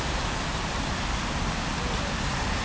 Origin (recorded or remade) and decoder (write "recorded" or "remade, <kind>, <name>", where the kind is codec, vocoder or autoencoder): recorded